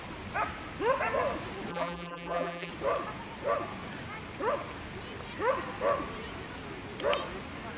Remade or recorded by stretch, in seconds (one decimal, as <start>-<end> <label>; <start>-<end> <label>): 0.0-1.7 recorded; 1.7-2.7 remade; 2.7-7.8 recorded